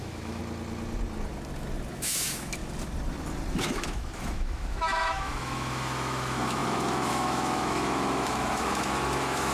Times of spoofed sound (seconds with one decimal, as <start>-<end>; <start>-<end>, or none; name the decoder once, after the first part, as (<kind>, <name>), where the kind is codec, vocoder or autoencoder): 0.0-0.4 (autoencoder, DAC-VAE); 1.9-2.6; 3.5-9.5